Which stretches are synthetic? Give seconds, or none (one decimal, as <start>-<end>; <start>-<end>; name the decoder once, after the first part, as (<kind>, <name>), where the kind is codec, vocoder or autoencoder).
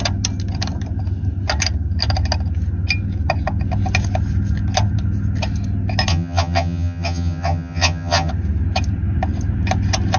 6.1-8.3 (vocoder, HiFi-GAN)